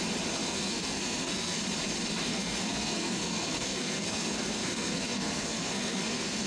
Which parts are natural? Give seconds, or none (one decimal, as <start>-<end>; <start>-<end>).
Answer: 0.0-0.4; 1.6-2.3